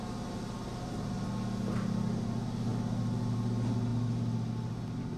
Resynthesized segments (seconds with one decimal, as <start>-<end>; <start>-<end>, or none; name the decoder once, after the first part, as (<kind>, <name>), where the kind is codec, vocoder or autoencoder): none